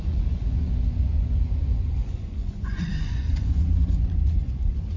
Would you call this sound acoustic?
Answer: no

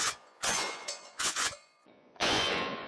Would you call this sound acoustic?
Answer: no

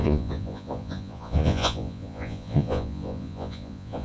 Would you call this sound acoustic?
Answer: no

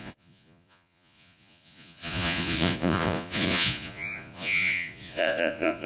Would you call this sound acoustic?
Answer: no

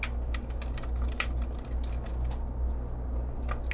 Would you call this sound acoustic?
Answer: yes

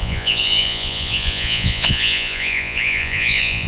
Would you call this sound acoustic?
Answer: no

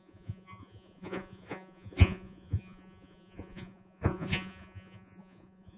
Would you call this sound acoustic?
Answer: no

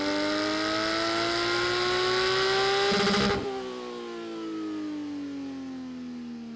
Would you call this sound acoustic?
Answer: yes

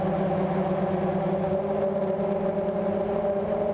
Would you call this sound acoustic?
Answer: yes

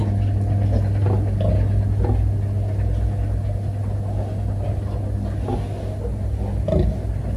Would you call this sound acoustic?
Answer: yes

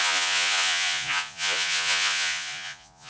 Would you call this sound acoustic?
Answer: no